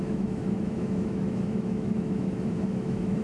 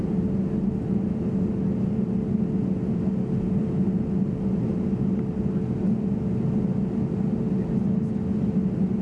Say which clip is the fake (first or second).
first